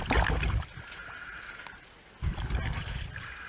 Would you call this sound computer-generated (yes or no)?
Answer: no